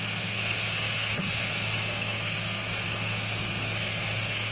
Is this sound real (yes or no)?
no